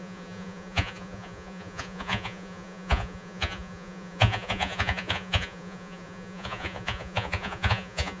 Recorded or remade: remade